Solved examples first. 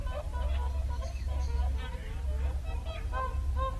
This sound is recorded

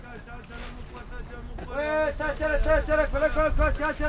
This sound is recorded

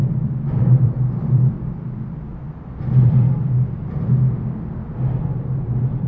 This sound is remade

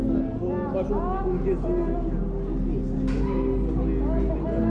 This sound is recorded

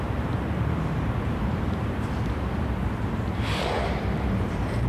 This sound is remade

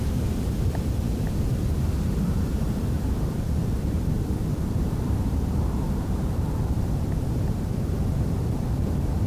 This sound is remade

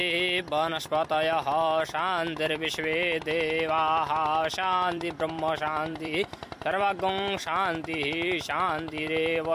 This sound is remade